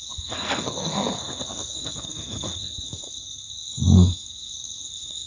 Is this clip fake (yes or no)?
yes